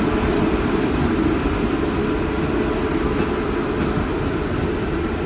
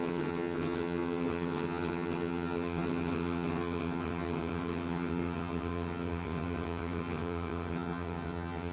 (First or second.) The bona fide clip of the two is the first